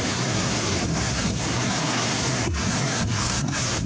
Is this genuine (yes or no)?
no